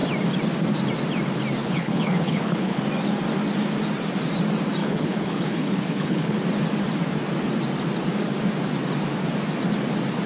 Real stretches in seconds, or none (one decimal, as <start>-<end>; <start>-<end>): 0.0-1.6; 2.8-4.8; 6.4-10.3